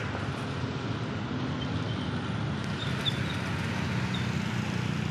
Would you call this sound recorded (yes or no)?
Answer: yes